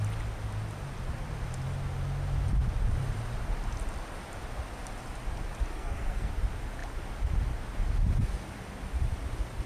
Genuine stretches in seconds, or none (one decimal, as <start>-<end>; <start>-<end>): 0.0-5.7; 6.3-9.7